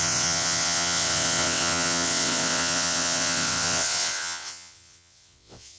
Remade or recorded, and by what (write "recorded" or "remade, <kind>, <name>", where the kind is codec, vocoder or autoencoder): remade, vocoder, WaveNeXt